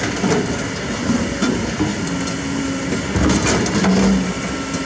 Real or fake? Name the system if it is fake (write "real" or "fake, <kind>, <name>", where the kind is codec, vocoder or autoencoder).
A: real